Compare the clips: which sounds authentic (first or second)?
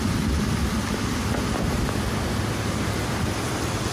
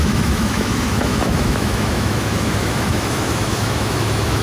first